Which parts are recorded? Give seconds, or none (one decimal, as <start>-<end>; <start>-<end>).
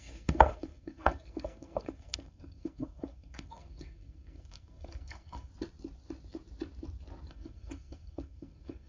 5.5-7.3